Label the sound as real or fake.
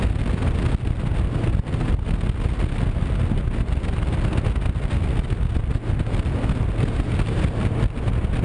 real